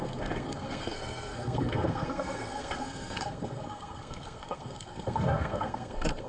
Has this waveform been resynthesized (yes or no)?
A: yes